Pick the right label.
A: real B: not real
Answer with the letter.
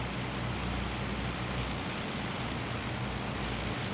A